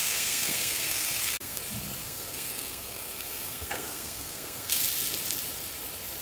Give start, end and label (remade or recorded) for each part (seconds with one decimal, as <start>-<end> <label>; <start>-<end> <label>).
0.0-1.6 remade; 1.6-2.0 recorded; 2.0-4.8 remade; 4.8-6.2 recorded